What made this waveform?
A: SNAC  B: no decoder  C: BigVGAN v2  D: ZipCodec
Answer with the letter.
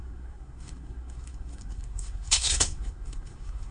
A